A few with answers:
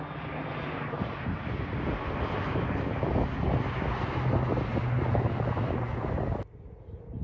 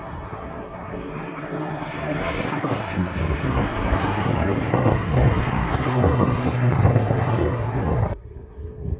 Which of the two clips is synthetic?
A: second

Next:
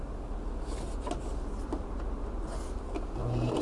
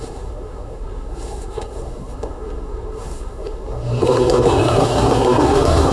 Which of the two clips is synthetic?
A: second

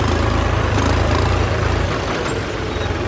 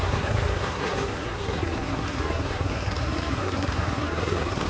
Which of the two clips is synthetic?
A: second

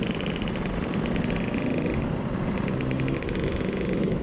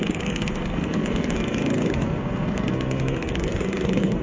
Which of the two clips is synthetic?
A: second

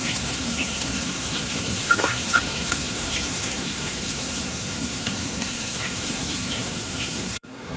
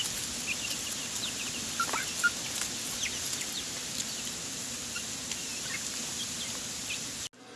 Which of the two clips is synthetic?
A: first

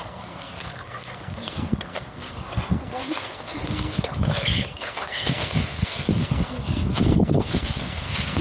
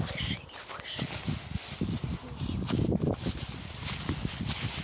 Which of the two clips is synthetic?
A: first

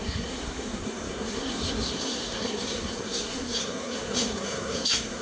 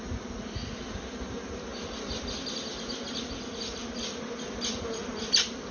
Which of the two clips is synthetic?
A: first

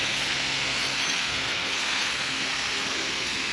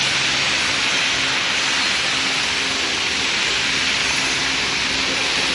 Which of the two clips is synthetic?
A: first